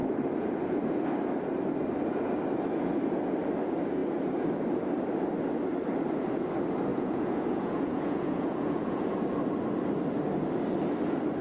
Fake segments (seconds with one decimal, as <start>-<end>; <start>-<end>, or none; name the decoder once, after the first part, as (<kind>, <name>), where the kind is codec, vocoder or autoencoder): 6.9-9.1 (vocoder, Vocos)

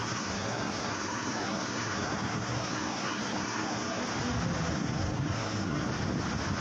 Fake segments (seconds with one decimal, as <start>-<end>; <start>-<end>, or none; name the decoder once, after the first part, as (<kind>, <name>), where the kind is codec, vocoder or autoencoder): 0.0-4.0 (codec, SNAC); 4.7-5.9

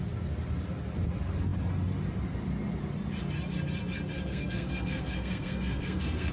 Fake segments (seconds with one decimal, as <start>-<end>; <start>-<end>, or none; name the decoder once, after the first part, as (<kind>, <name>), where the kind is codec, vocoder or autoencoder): 4.3-6.3 (codec, SNAC)

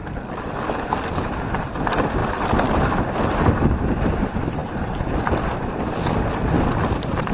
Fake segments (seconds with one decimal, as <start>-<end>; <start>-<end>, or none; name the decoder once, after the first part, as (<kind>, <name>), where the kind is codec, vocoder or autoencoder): none

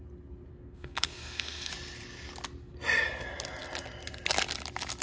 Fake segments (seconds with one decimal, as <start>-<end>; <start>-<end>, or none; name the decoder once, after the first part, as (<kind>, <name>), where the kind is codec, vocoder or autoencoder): 0.5-1.7 (codec, SNAC)

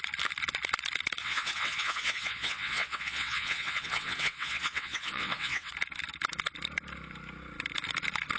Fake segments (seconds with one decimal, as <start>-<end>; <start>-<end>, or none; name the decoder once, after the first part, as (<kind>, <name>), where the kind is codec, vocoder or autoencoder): 1.2-5.7 (vocoder, WaveNeXt)

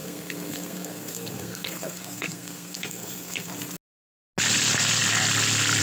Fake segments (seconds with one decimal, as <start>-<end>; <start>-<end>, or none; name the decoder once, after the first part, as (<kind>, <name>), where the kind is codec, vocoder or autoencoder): 0.0-3.5 (codec, SNAC)

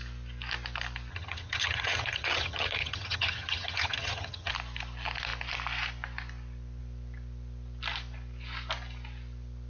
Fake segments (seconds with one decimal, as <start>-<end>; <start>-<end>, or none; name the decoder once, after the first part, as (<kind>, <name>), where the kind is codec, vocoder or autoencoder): 1.1-4.5 (vocoder, HiFi-GAN)